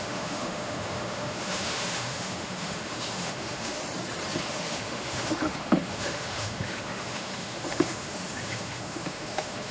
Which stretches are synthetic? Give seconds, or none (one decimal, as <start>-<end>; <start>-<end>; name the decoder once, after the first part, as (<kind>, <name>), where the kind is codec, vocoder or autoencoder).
0.0-3.8 (autoencoder, DAC-VAE); 4.4-9.7